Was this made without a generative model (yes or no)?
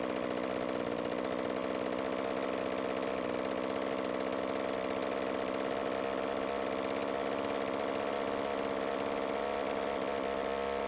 yes